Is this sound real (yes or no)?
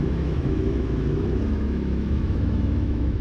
no